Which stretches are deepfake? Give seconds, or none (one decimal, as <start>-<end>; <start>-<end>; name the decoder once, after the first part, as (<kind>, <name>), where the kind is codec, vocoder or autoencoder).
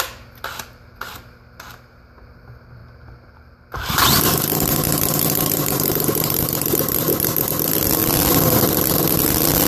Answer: none